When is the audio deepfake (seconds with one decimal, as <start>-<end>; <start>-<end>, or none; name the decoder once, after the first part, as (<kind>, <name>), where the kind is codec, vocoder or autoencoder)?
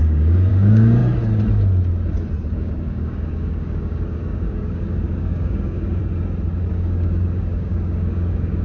0.0-1.0 (codec, DAC); 2.5-6.0; 6.7-8.6